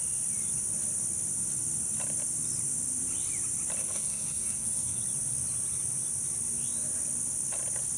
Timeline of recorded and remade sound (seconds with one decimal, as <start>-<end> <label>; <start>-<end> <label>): 0.0-3.8 recorded; 3.8-5.0 remade; 5.0-8.0 recorded